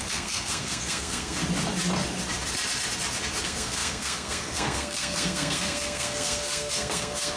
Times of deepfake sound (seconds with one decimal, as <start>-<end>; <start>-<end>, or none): 0.0-1.4; 3.4-7.4